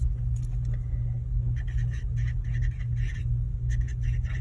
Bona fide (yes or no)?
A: yes